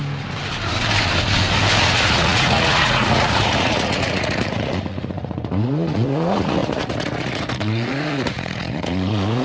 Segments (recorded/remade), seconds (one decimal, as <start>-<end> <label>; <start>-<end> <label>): 0.0-1.8 recorded; 1.8-9.4 remade